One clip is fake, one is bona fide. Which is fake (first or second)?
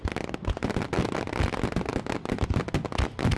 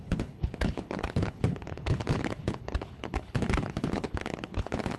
second